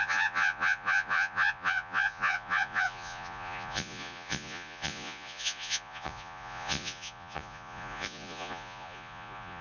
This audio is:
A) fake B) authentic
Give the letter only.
A